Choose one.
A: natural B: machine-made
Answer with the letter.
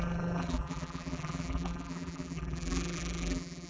B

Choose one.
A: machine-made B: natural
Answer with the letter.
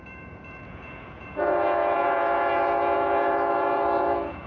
A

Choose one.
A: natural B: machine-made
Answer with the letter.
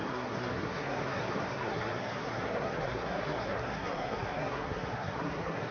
B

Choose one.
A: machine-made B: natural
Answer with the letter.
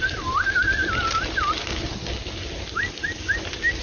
B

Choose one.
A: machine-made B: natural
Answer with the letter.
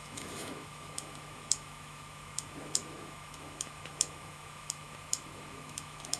A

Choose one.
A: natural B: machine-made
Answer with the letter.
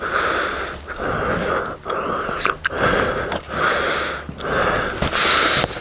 A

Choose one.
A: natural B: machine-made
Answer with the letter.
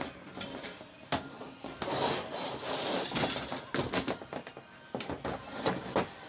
A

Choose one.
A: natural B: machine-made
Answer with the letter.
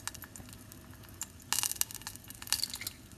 A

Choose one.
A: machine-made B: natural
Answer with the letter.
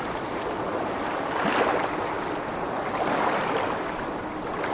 B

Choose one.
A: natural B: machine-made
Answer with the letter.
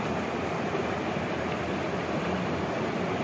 A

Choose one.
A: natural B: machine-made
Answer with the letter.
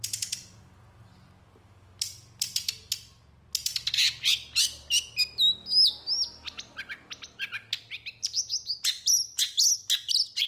A